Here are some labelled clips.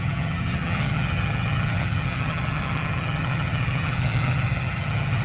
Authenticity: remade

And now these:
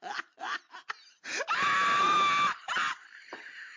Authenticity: recorded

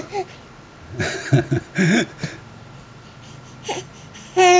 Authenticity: recorded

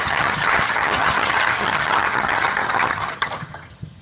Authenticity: remade